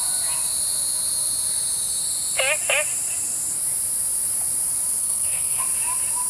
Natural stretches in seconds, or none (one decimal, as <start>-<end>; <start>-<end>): 0.0-5.0; 5.6-6.3